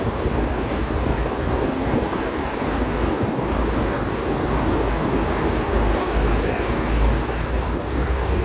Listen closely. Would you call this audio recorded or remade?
remade